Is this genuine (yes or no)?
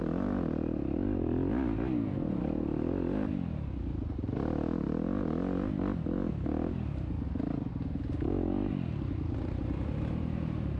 yes